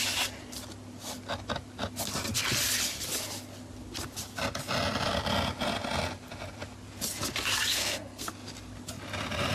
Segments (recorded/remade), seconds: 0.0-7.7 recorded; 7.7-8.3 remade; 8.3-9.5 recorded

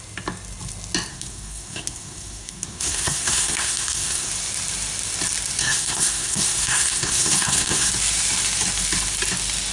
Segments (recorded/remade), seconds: 0.0-1.1 recorded; 1.1-4.3 remade; 4.3-5.6 recorded; 5.6-7.9 remade; 7.9-9.7 recorded

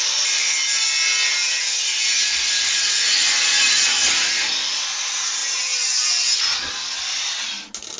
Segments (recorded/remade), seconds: 0.0-8.0 recorded

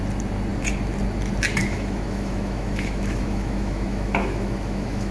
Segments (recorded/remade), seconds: 0.0-1.6 recorded; 1.6-5.1 remade

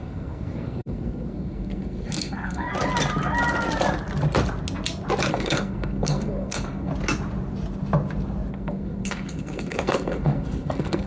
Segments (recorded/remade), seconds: 0.0-2.7 remade; 2.7-5.3 recorded; 5.3-6.9 remade; 6.9-8.5 recorded; 8.5-11.1 remade

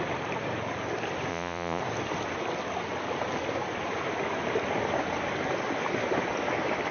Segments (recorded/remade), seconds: 0.0-1.3 recorded; 1.3-1.8 remade; 1.8-6.9 recorded

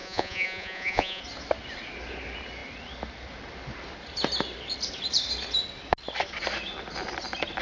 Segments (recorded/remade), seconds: 0.0-1.2 remade; 1.2-7.6 recorded

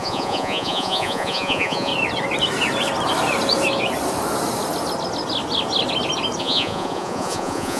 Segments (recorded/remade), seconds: 0.0-1.9 remade; 1.9-6.4 recorded; 6.4-7.8 remade